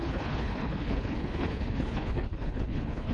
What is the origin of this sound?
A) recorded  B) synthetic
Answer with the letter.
B